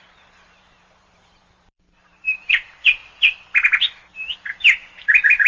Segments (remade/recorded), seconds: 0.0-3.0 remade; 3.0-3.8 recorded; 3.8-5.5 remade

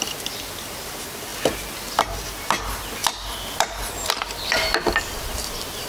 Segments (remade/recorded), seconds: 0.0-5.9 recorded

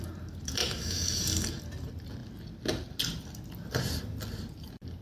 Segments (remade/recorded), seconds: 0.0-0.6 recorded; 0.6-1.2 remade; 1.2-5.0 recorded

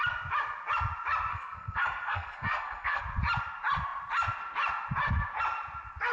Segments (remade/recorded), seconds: 0.0-1.3 recorded; 1.3-3.0 remade; 3.0-6.1 recorded

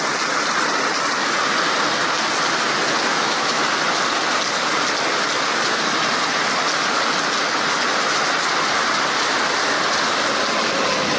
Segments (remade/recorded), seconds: 0.0-3.1 recorded; 3.1-3.6 remade; 3.6-11.2 recorded